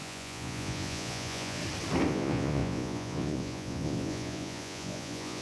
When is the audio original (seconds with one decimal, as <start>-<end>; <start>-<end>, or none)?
1.6-2.1